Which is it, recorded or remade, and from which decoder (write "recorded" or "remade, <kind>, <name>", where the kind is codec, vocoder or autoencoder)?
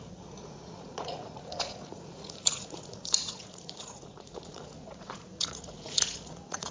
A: remade, vocoder, Vocos